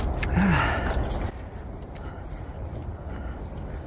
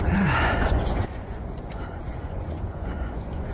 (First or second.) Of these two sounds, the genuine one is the first